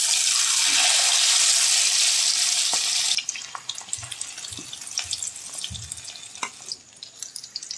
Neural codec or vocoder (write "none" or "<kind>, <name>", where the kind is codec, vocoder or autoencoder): none